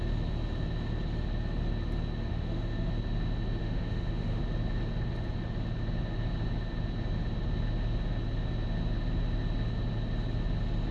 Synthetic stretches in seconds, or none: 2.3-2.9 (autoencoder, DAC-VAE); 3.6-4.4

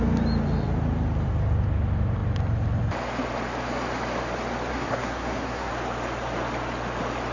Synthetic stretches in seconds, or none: 4.7-5.7 (codec, SNAC)

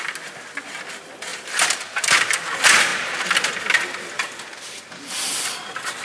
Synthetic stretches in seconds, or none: 1.3-2.0 (vocoder, BigVGAN v2)

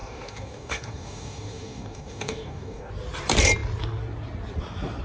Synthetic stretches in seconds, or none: 0.0-2.9 (codec, DAC)

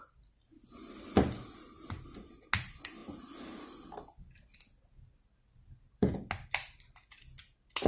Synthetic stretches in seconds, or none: none

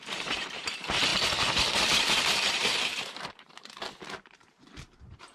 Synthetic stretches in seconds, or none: 0.0-1.1 (vocoder, BigVGAN v2); 1.8-5.3

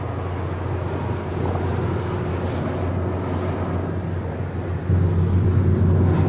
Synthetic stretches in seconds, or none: none

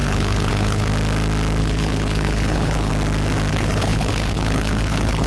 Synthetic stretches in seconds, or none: 0.0-0.9 (codec, HILCodec); 1.6-2.9; 3.5-5.3